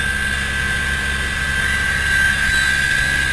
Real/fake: real